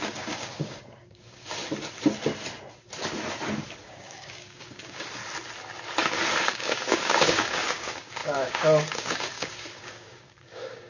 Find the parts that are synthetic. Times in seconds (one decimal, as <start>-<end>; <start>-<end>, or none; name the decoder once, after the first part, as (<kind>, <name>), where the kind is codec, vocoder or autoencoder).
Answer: 0.0-1.6 (codec, DAC); 3.8-5.2; 6.4-10.9